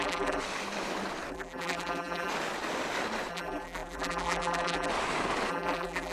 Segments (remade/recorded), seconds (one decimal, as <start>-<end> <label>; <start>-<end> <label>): 0.0-0.4 remade; 0.4-1.3 recorded; 1.3-2.3 remade; 2.3-3.3 recorded; 3.3-4.9 remade; 4.9-5.5 recorded; 5.5-6.1 remade